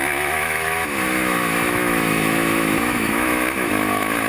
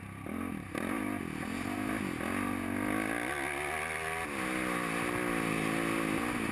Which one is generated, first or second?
first